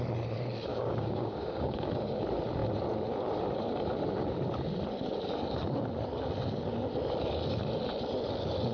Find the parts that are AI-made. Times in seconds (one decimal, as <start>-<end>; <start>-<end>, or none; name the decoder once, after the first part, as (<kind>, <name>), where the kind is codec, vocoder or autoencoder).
0.7-1.9 (codec, DAC)